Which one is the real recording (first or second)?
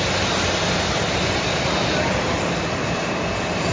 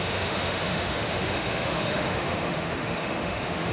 first